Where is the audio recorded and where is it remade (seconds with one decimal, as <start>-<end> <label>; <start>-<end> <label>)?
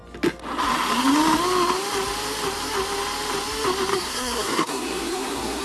0.0-3.9 recorded; 3.9-5.6 remade